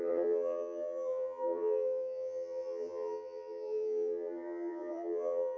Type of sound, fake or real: fake